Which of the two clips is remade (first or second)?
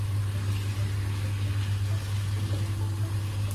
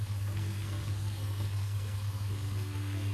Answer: second